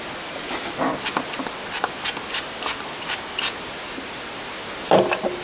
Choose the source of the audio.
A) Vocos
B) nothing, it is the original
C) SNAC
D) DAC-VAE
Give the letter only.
B